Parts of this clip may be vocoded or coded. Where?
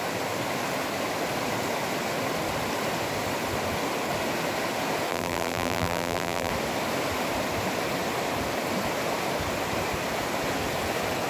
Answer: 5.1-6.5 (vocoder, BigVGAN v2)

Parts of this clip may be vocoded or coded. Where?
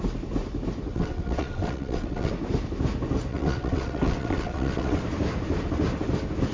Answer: 0.9-2.3 (vocoder, WaveNeXt); 3.3-5.0